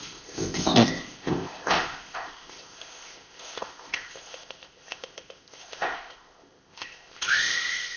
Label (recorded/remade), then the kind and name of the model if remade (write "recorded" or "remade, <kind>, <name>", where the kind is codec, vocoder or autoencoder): remade, codec, ZipCodec